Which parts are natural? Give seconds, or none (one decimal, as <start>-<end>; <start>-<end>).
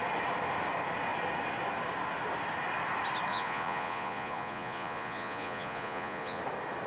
0.0-3.3; 6.4-6.9